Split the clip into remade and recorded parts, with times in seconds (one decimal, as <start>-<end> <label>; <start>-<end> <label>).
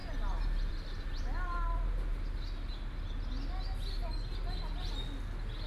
0.0-5.7 recorded